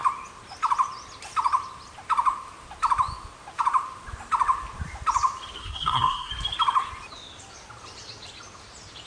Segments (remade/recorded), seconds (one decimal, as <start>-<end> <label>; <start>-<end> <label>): 0.0-5.6 recorded; 5.6-6.3 remade; 6.3-9.1 recorded